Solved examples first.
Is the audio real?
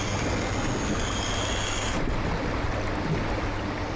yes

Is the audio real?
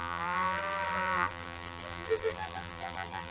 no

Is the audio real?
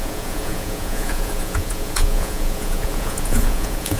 no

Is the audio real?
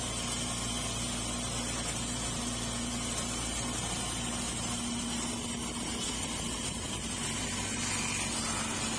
yes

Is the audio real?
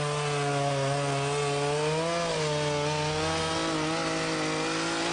yes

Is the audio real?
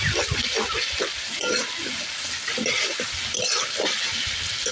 yes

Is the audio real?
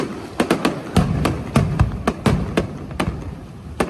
yes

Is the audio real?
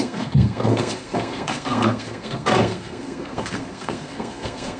no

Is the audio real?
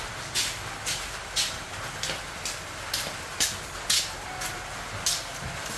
yes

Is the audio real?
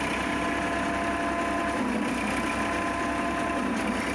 yes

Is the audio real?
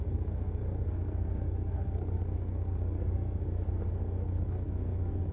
no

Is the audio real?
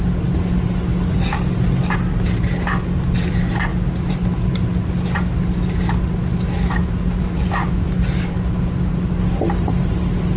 yes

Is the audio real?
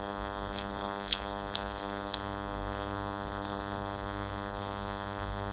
no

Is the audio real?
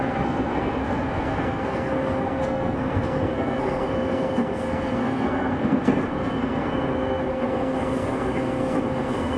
no